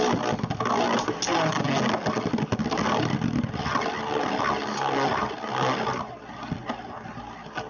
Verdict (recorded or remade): recorded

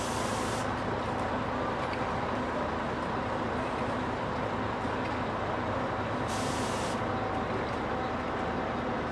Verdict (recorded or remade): recorded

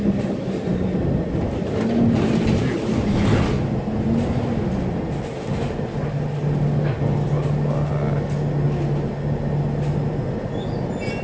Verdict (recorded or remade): recorded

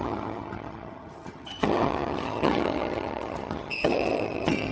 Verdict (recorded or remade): remade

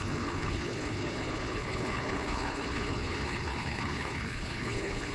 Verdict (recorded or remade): remade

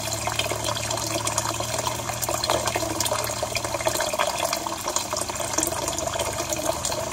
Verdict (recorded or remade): recorded